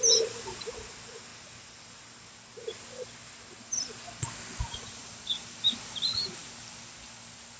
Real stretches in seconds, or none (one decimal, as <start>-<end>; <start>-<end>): 0.0-7.6